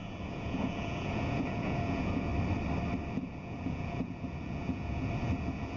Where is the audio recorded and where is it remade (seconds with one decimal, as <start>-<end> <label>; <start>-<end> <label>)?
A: 0.0-2.3 remade; 2.3-3.1 recorded; 3.1-5.8 remade